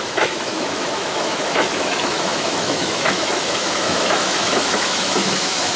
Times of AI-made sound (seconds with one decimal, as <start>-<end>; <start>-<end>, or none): 0.0-5.8